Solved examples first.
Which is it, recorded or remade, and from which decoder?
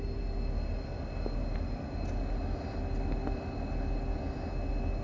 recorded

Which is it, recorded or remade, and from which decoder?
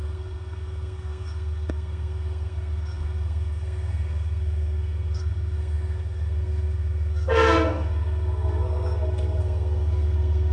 remade, codec, SNAC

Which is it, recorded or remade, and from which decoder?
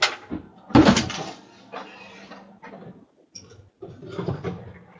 recorded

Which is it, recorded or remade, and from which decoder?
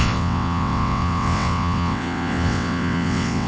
remade, vocoder, WaveNeXt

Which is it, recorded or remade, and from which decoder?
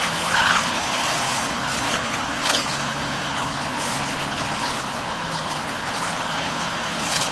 remade, codec, HILCodec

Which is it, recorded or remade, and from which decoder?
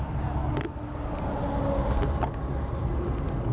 recorded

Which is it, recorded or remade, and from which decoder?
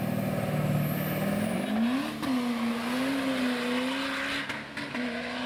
recorded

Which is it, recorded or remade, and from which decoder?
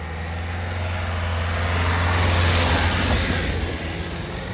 recorded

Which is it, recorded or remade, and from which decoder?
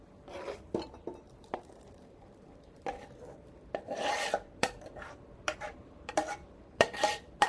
remade, vocoder, BigVGAN v2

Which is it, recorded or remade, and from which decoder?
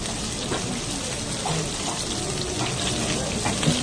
recorded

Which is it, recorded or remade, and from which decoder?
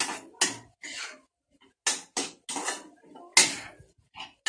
recorded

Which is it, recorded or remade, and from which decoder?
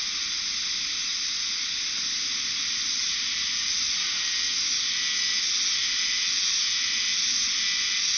recorded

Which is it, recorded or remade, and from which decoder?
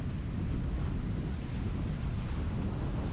recorded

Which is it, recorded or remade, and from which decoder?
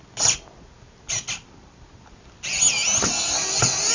recorded